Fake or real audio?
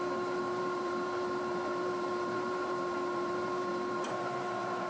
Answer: fake